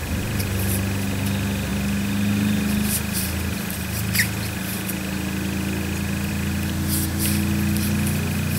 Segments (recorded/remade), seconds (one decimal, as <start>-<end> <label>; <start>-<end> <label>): 0.0-8.6 recorded